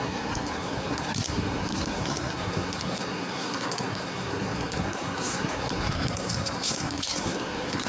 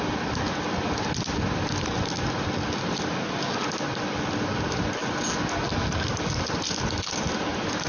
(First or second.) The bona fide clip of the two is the second